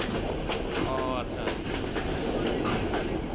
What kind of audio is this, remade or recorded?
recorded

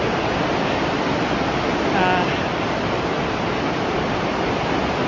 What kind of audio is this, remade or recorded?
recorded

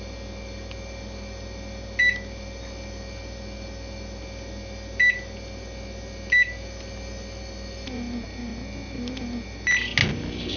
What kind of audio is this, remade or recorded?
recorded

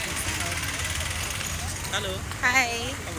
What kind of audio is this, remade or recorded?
recorded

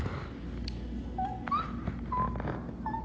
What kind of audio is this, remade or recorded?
recorded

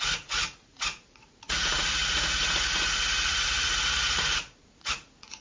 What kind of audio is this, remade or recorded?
remade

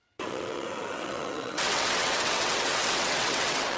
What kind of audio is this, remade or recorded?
remade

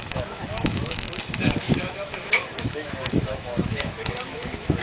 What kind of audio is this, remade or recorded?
remade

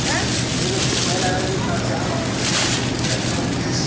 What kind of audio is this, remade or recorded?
recorded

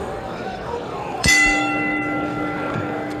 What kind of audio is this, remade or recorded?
remade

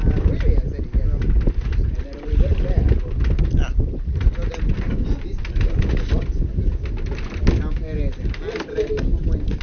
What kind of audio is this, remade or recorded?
recorded